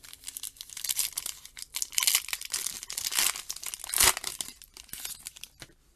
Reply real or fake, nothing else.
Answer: real